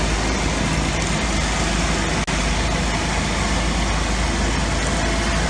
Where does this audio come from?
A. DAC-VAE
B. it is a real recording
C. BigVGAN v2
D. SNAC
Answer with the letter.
B